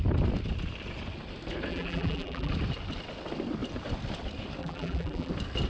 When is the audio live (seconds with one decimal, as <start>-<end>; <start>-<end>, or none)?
0.0-1.7; 2.5-4.6; 5.3-5.7